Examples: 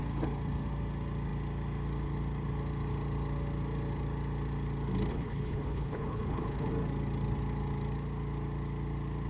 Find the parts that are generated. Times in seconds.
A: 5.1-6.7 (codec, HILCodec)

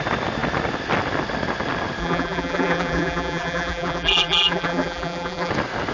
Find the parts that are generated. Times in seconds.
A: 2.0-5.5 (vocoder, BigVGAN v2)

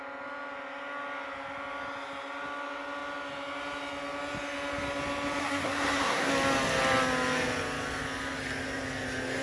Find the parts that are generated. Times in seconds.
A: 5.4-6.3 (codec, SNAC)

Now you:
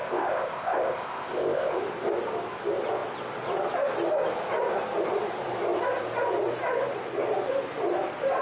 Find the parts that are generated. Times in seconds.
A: 0.0-1.8 (codec, ZipCodec)

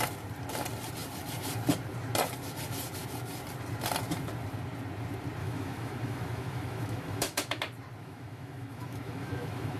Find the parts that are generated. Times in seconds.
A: 5.4-7.6 (autoencoder, DAC-VAE); 8.0-9.8

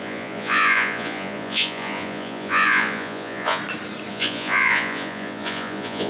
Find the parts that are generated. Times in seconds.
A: 0.0-3.6 (vocoder, Vocos); 4.1-6.1